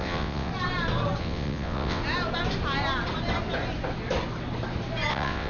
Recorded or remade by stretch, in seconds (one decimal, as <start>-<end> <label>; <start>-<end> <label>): 0.0-0.5 remade; 0.5-1.2 recorded; 1.2-2.0 remade; 2.0-5.1 recorded; 5.1-5.5 remade